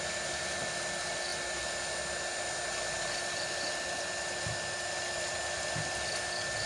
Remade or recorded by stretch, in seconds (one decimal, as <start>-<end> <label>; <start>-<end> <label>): 0.0-6.7 recorded